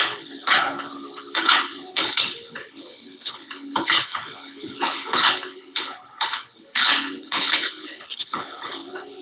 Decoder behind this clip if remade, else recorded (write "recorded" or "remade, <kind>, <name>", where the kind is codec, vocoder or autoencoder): remade, codec, HILCodec